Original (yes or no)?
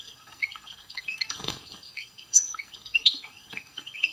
no